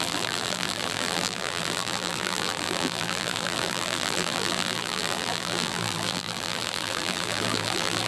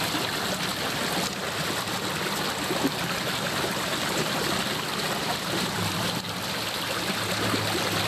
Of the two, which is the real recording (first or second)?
second